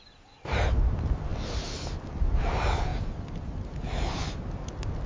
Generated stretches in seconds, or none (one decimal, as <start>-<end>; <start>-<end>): none